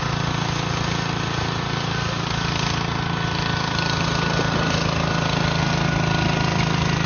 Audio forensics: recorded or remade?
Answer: recorded